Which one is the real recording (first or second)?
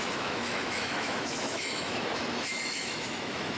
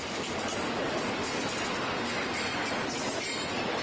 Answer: second